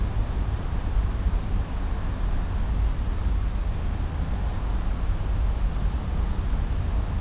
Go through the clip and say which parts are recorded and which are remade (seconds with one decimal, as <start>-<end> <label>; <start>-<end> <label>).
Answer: 0.0-3.2 recorded; 3.2-3.7 remade; 3.7-7.2 recorded